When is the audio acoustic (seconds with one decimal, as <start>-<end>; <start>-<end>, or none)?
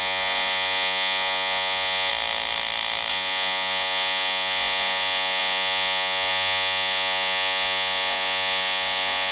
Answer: 2.1-3.1